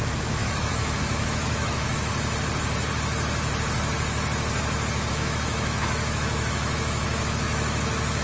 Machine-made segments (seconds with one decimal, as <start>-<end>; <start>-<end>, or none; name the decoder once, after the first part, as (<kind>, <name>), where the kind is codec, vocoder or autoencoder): 0.0-2.1 (autoencoder, DAC-VAE); 5.1-8.2